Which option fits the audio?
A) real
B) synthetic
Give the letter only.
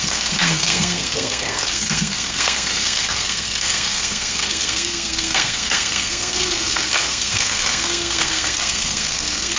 B